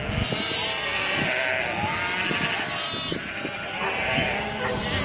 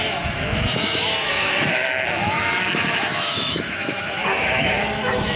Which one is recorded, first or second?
first